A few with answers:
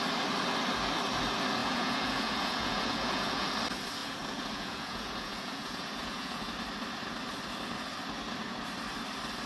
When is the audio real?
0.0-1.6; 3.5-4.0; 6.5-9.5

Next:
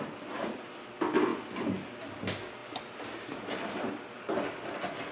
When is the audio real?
0.0-5.1